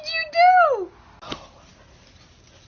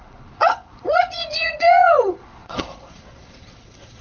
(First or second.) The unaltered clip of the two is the first